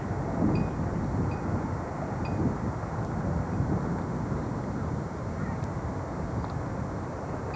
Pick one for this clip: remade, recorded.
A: recorded